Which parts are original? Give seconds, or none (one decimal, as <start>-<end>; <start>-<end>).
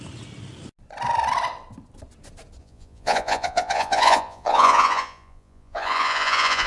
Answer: 0.0-2.6